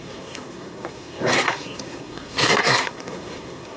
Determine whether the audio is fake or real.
fake